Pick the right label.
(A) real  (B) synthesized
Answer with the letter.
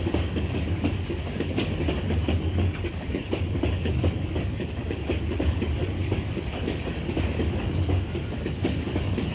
B